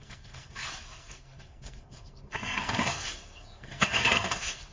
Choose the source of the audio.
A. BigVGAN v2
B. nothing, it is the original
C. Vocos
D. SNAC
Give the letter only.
D